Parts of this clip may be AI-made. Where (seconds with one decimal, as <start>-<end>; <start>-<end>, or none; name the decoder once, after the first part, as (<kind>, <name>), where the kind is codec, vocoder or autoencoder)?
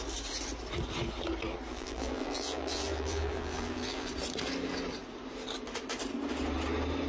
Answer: 1.7-4.1 (vocoder, BigVGAN v2)